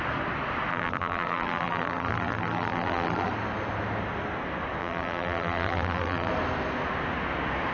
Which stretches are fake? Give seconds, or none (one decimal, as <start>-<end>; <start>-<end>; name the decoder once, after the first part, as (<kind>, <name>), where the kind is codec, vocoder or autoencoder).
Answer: 0.7-3.3 (vocoder, BigVGAN v2); 4.8-6.3